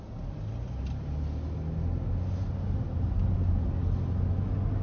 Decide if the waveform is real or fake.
real